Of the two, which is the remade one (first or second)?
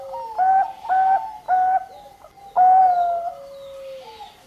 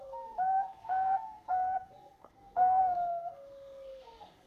second